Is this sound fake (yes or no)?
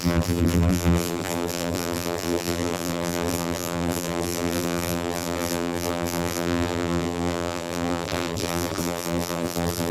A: yes